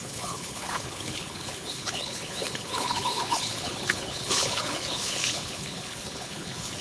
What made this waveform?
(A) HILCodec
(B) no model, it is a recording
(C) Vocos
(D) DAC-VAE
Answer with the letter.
A